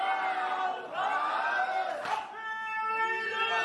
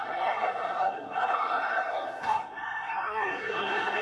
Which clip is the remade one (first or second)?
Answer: second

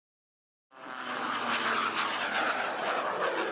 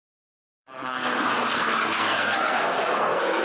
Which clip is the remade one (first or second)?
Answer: second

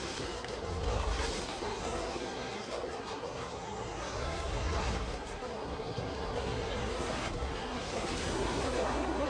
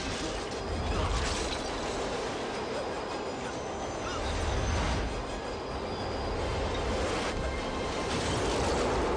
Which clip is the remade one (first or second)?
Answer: first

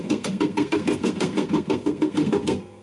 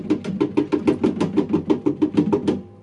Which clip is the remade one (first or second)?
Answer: first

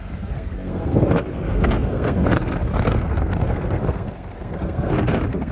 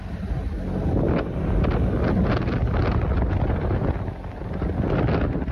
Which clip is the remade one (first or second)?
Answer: first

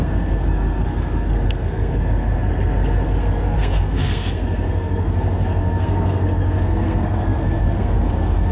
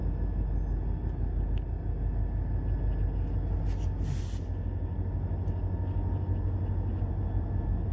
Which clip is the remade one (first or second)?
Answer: first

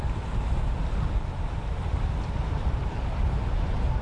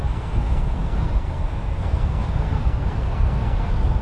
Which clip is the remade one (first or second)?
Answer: second